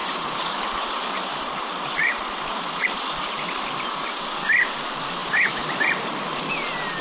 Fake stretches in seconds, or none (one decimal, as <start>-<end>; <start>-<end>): 0.0-4.2; 5.2-6.5